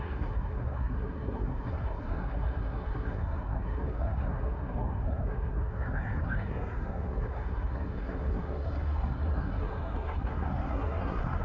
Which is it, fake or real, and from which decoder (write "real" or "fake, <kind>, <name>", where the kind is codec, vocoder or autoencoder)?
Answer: fake, codec, SNAC